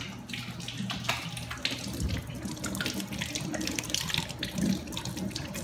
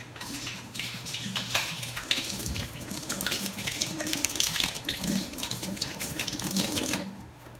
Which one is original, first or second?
first